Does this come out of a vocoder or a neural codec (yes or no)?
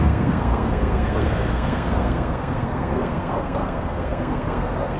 yes